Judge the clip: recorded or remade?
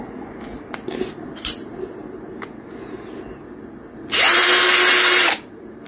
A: recorded